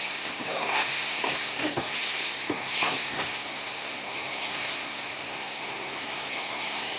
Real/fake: fake